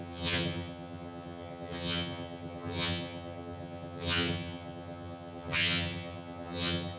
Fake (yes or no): yes